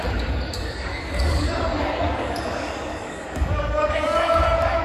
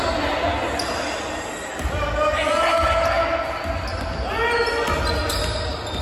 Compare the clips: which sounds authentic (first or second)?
second